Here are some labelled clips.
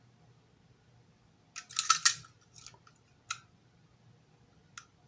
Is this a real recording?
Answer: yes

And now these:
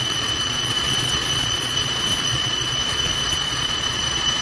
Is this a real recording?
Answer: no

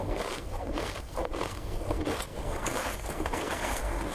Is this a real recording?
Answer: no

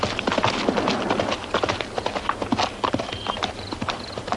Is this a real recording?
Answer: yes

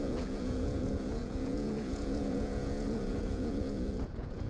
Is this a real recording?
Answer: no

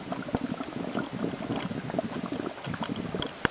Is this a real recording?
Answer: yes